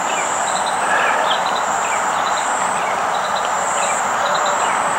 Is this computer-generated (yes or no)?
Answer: yes